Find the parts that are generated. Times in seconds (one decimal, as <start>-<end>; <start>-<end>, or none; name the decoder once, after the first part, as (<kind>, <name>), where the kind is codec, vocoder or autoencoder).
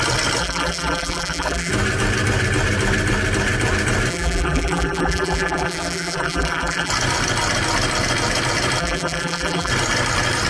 0.4-1.7 (vocoder, BigVGAN v2); 4.1-6.9; 8.8-9.7